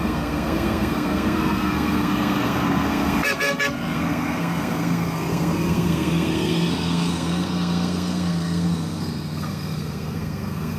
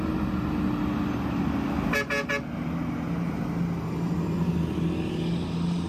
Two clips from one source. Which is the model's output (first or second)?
first